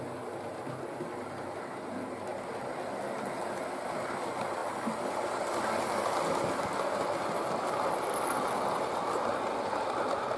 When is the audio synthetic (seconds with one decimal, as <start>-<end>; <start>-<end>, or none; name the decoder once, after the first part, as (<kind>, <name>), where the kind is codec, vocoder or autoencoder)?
none